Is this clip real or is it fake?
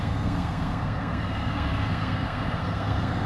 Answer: fake